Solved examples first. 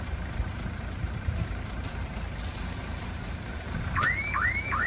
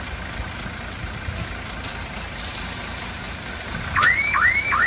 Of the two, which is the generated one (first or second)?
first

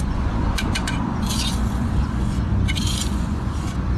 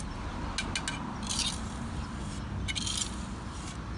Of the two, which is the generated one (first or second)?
first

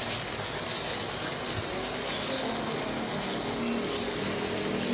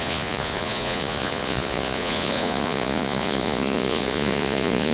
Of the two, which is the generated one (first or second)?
second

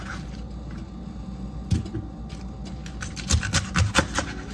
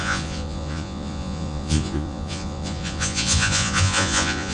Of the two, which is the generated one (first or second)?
second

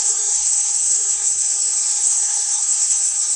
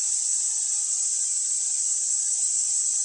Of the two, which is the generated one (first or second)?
first